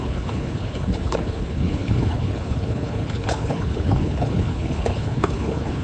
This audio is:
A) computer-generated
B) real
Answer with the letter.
A